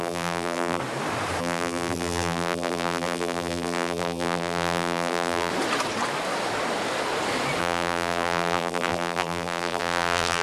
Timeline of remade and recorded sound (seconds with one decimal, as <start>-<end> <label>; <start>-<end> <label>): 0.0-0.8 remade; 0.8-1.4 recorded; 1.4-5.5 remade; 5.5-7.6 recorded; 7.6-10.4 remade

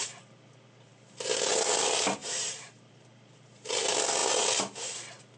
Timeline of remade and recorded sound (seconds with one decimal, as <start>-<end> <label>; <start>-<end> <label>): 0.0-2.2 recorded; 2.2-2.9 remade; 2.9-5.4 recorded